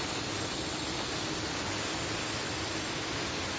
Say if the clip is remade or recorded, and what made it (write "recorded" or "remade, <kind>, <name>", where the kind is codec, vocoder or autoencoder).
recorded